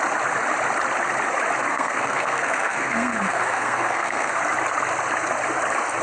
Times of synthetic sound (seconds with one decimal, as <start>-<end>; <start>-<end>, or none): 1.7-4.4